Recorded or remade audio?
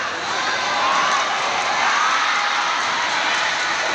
recorded